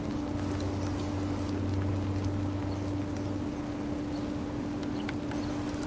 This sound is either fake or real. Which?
real